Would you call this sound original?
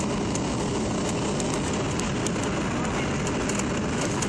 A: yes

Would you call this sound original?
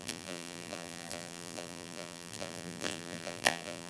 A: no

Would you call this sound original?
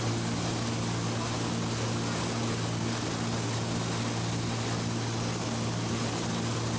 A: yes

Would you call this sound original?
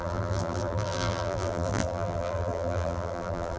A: no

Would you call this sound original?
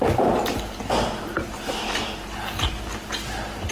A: no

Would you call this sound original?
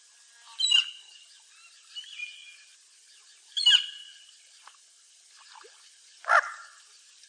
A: yes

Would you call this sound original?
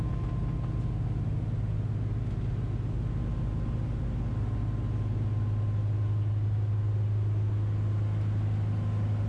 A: yes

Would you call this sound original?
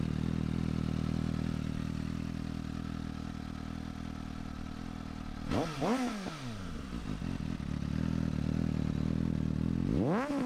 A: yes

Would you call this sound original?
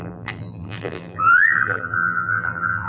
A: no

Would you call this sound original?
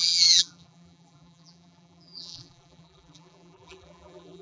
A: no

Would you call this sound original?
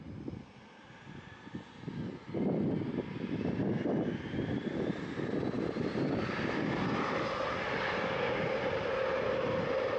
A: yes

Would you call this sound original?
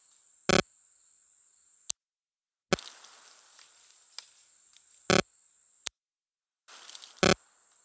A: yes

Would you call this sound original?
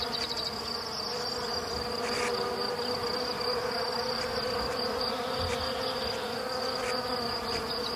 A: yes